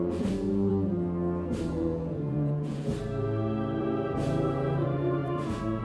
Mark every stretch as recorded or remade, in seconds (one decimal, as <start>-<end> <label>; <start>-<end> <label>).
0.0-0.7 remade; 0.7-1.7 recorded; 1.7-2.9 remade; 2.9-3.8 recorded; 3.8-5.8 remade